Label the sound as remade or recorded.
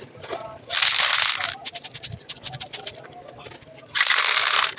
recorded